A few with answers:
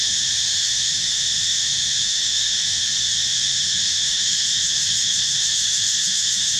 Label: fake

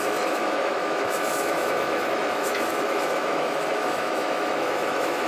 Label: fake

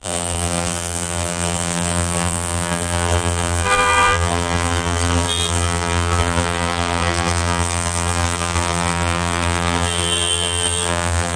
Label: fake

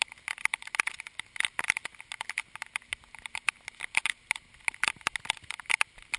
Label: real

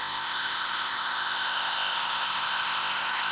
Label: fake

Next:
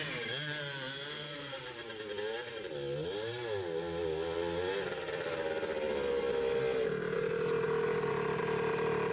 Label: real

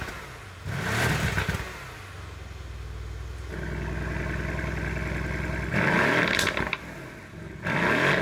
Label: real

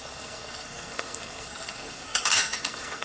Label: fake